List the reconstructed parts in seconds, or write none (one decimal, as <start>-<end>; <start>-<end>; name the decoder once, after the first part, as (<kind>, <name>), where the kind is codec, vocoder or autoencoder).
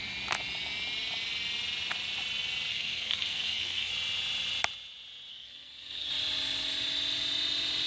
2.7-3.9 (codec, SNAC); 5.3-6.1